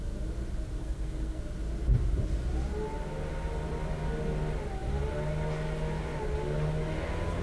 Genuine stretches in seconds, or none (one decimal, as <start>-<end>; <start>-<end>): 0.0-0.8; 1.4-7.4